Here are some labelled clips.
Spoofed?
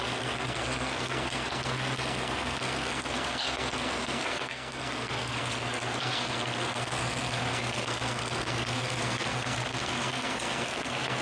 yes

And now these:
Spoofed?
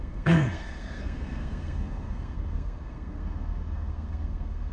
yes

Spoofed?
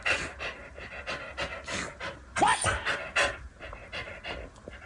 no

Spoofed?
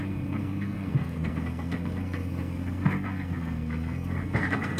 yes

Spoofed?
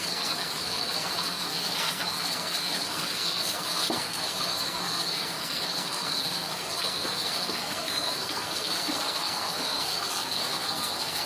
yes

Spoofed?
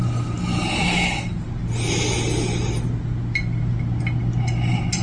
no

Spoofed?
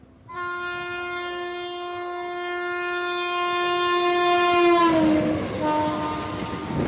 no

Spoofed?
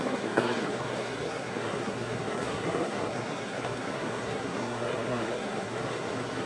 yes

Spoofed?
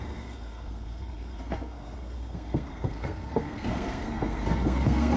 yes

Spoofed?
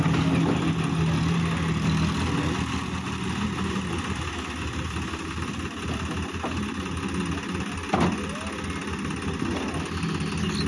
no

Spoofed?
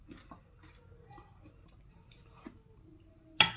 no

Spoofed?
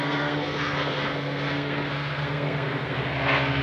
yes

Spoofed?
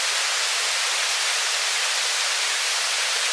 no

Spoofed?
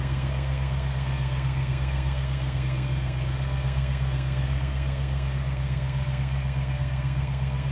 yes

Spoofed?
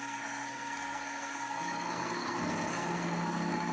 yes